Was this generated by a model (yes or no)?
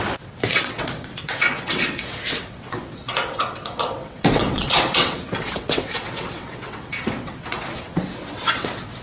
yes